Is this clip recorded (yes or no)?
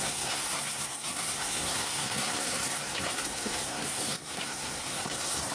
no